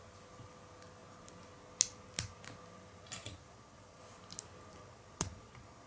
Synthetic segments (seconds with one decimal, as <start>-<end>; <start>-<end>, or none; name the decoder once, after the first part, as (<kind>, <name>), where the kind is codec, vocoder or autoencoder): 3.2-4.0 (vocoder, Vocos); 4.8-5.9